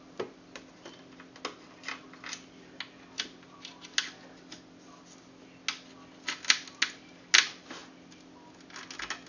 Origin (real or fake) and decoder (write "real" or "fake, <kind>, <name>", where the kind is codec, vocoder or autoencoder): real